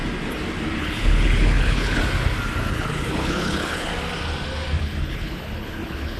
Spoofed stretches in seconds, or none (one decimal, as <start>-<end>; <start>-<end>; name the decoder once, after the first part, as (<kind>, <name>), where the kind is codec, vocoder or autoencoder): 0.8-2.0 (codec, HILCodec); 2.7-3.9; 4.8-6.2